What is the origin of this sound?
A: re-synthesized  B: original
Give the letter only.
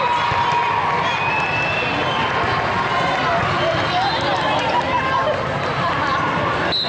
B